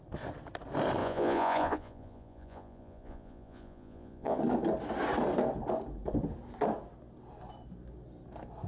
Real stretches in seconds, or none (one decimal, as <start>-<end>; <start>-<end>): 0.0-1.0; 4.4-8.7